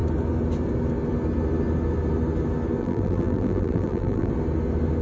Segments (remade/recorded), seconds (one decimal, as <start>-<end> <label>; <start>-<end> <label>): 0.0-2.8 recorded; 2.8-4.3 remade; 4.3-5.0 recorded